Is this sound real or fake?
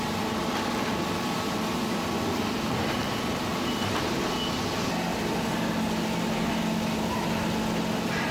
real